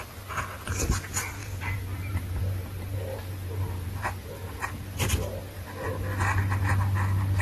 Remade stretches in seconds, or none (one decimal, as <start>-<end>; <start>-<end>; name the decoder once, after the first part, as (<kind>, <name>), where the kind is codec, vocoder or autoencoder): 1.4-4.2 (vocoder, BigVGAN v2)